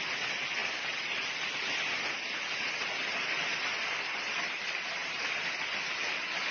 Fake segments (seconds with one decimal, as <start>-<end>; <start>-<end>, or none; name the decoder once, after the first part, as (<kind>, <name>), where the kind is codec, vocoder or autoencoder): none